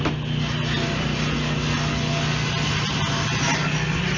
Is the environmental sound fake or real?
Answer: real